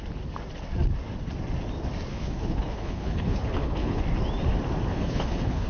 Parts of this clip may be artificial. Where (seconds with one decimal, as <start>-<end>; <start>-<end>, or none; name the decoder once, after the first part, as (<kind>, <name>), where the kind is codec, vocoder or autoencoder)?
2.1-4.0 (codec, HILCodec); 4.9-5.7